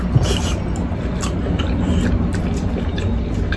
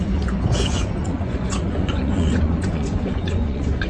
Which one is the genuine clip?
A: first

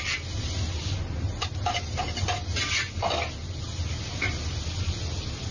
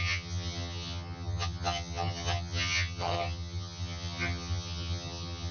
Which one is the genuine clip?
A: first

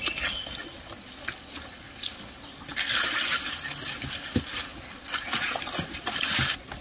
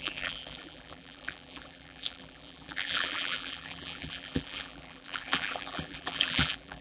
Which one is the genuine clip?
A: first